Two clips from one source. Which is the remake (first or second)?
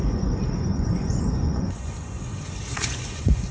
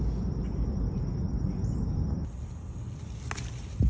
first